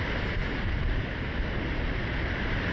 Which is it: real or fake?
fake